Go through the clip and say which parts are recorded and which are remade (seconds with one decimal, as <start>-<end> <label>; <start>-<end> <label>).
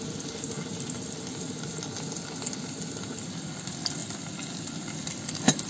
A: 0.0-5.7 recorded